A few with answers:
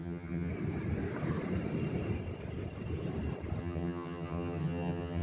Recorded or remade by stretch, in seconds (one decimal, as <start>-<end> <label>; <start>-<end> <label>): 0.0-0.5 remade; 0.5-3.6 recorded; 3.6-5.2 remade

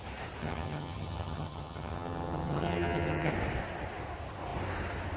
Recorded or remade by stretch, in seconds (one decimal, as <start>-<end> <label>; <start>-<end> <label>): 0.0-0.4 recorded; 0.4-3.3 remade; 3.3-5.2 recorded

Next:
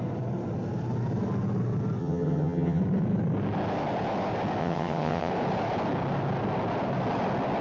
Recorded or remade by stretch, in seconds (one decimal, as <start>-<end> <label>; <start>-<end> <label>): 0.0-2.0 recorded; 2.0-2.8 remade; 2.8-4.6 recorded; 4.6-5.3 remade; 5.3-7.6 recorded

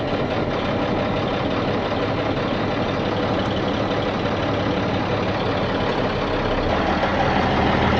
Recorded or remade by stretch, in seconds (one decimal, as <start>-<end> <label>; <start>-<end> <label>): 0.0-8.0 recorded

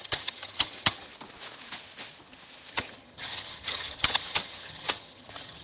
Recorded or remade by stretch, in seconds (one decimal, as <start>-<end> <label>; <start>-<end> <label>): 0.0-1.1 remade; 1.1-2.7 recorded; 2.7-5.6 remade